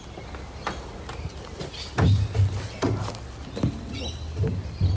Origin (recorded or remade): recorded